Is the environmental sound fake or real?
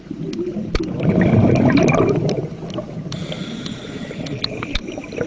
real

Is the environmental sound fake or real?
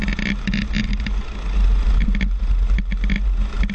real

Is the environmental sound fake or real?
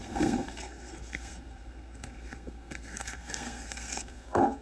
fake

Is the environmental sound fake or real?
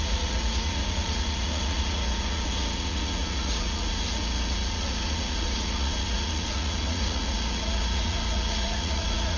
fake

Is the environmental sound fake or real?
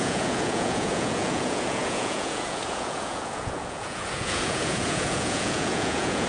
fake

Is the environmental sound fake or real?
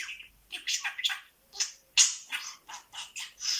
real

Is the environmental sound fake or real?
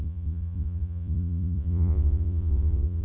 fake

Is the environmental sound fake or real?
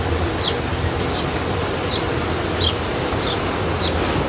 real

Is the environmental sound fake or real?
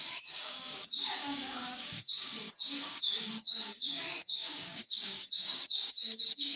fake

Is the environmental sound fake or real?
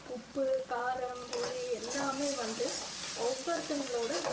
fake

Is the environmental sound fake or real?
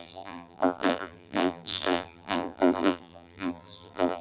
fake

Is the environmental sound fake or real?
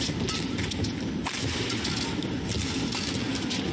real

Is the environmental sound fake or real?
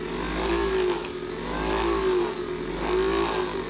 real